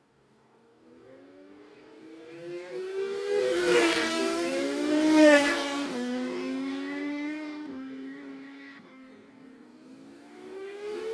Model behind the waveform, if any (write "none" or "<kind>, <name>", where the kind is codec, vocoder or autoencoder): codec, DAC